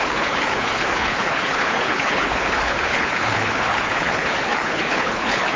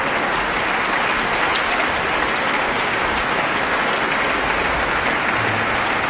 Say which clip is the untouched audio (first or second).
second